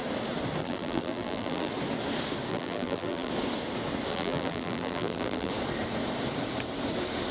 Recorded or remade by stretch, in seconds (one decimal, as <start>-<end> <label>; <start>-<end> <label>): 0.0-0.6 recorded; 0.6-1.7 remade; 1.7-2.5 recorded; 2.5-3.3 remade; 3.3-4.1 recorded; 4.1-5.5 remade; 5.5-7.3 recorded

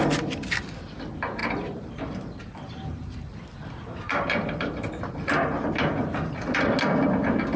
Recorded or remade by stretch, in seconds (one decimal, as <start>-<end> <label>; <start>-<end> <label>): 0.0-1.4 recorded; 1.4-5.0 remade; 5.0-7.6 recorded

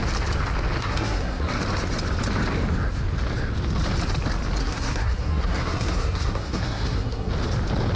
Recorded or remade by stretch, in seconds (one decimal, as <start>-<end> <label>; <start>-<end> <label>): 0.0-0.8 recorded; 0.8-1.6 remade; 1.6-4.6 recorded; 4.6-7.3 remade; 7.3-8.0 recorded

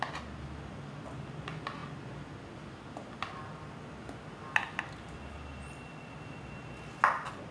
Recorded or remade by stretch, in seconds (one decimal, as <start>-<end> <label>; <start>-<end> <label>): 0.0-7.5 recorded

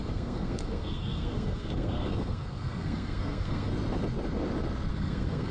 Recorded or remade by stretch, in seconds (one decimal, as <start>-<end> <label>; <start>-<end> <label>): 0.0-3.7 remade; 3.7-4.9 recorded; 4.9-5.5 remade

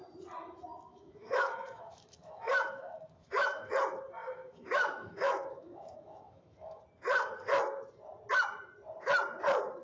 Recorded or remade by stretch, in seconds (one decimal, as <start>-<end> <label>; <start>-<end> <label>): 0.0-0.9 recorded; 0.9-3.7 remade; 3.7-4.2 recorded; 4.2-6.8 remade; 6.8-9.8 recorded